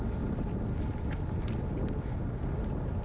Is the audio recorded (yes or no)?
yes